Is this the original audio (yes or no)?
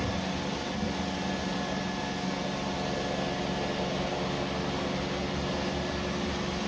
yes